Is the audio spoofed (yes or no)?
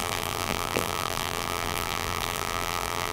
yes